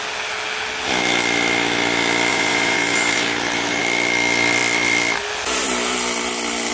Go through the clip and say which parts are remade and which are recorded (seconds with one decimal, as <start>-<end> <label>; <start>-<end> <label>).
0.0-2.3 recorded; 2.3-3.8 remade; 3.8-6.7 recorded